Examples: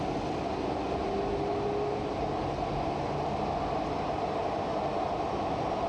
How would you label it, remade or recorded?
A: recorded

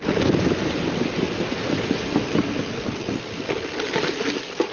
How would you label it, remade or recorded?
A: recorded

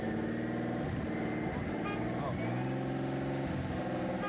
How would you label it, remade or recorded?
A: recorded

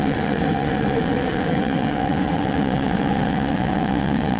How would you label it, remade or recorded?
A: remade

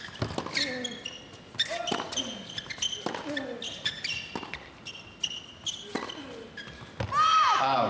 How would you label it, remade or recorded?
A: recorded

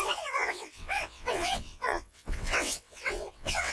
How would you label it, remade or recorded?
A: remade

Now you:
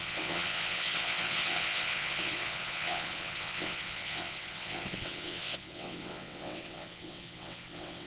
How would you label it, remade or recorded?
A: remade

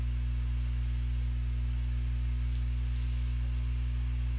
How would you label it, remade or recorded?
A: recorded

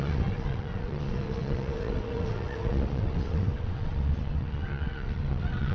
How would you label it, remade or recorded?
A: remade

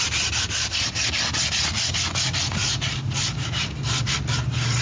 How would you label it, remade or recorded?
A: recorded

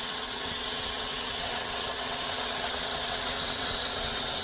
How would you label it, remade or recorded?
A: remade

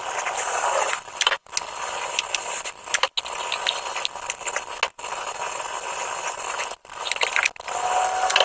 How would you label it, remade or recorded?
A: recorded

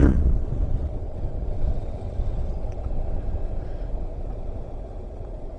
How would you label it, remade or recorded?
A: remade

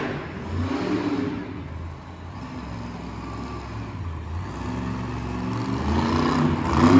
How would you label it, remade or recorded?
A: recorded